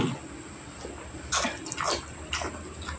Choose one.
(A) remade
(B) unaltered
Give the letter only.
B